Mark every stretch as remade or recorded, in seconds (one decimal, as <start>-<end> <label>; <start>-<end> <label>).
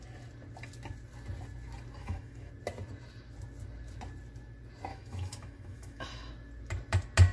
0.0-2.0 recorded; 2.0-2.5 remade; 2.5-4.9 recorded; 4.9-6.3 remade; 6.3-7.3 recorded